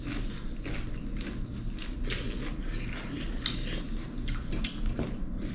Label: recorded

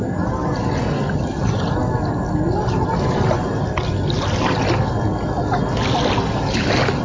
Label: recorded